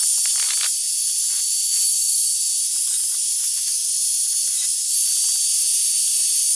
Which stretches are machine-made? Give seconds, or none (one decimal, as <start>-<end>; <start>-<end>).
1.6-2.3; 3.4-3.9